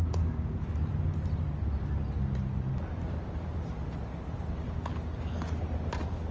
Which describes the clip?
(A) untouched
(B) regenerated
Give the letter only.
A